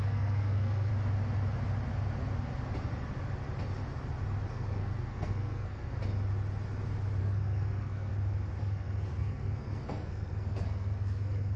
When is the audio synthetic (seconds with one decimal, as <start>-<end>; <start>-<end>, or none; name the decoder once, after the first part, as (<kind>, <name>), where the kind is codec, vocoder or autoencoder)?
0.0-0.9 (codec, SNAC); 4.5-5.9; 7.2-8.1; 8.6-11.6